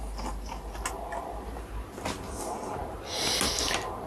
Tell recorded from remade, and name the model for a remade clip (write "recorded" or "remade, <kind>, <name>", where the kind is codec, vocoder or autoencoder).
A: recorded